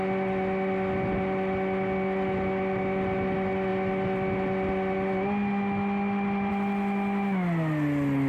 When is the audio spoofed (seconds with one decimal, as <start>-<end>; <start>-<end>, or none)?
none